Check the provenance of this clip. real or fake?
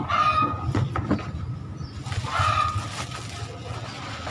real